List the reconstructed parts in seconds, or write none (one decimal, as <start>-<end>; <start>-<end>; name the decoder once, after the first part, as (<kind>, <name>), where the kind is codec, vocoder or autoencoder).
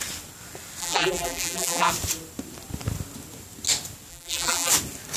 0.8-1.9 (vocoder, BigVGAN v2); 4.1-4.7